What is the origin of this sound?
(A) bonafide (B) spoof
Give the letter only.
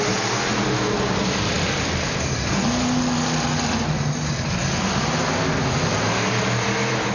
A